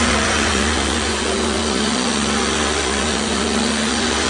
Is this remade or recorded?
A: remade